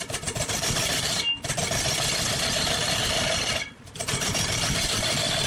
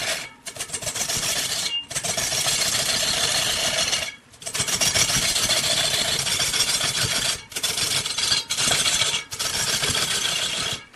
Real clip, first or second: second